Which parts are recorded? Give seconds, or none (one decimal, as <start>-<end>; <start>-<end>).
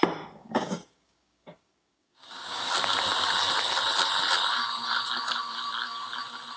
0.0-0.4; 2.7-6.6